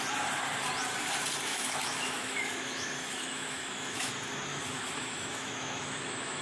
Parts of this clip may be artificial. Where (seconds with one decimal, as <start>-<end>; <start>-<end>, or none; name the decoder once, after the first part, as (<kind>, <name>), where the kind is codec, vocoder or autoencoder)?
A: 1.5-4.1 (autoencoder, DAC-VAE); 4.5-6.4

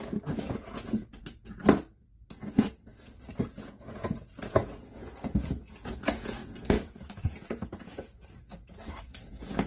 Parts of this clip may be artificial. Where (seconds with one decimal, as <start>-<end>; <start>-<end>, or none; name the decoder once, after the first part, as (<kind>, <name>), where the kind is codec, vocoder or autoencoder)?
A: 0.0-1.6 (vocoder, Vocos); 2.4-2.9; 3.5-9.7